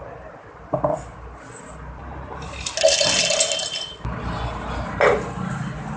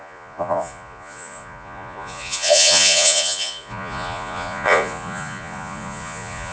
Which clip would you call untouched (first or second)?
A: first